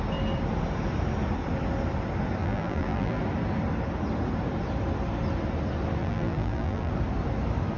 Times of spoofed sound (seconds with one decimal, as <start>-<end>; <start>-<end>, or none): 2.4-3.2; 6.0-6.9